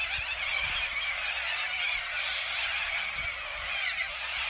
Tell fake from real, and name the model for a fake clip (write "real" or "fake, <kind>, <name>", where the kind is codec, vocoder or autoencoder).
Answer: real